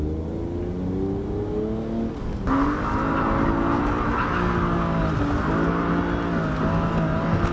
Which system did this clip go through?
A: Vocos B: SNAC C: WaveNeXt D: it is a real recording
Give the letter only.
D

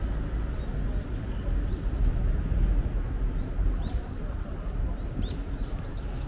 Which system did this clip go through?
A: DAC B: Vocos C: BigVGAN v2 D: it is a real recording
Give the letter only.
D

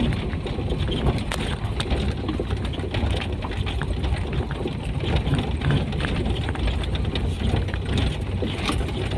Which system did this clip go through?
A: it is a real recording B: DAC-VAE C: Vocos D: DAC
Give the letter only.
A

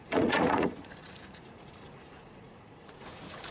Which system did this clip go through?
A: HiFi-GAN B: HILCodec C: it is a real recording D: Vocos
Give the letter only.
D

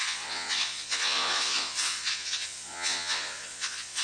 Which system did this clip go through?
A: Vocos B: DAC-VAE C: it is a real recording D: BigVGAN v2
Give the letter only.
A